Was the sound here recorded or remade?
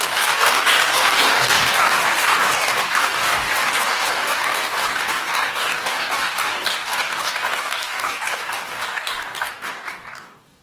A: remade